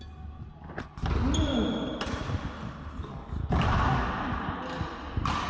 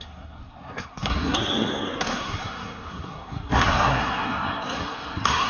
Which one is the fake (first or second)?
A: second